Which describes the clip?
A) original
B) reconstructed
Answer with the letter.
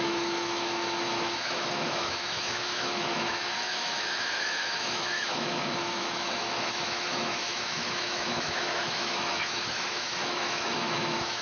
B